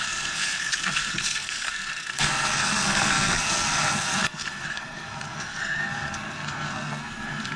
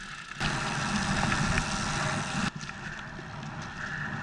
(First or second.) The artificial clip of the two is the first